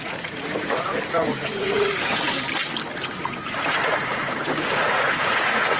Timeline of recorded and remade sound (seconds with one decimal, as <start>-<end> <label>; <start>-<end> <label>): 0.0-2.3 remade; 2.3-3.1 recorded; 3.1-5.8 remade